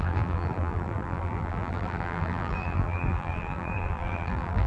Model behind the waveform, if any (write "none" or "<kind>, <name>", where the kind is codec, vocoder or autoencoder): vocoder, BigVGAN v2